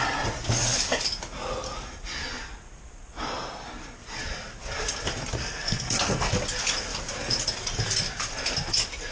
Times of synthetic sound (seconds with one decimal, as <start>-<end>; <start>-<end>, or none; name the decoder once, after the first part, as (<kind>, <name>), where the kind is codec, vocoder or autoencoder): 5.4-6.3 (codec, SNAC)